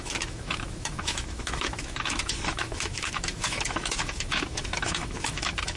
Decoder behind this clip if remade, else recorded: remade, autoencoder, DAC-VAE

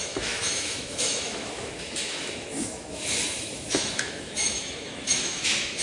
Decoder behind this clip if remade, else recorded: remade, autoencoder, DAC-VAE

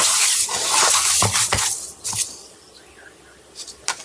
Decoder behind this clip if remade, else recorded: recorded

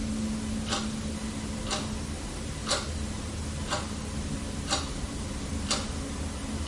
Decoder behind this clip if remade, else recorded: recorded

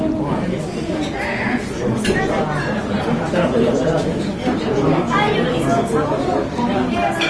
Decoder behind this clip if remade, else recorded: recorded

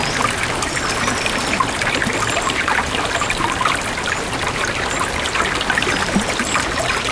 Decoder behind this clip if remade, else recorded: recorded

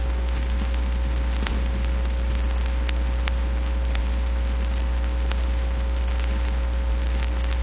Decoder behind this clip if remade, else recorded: recorded